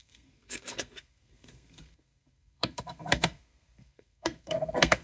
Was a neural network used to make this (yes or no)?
yes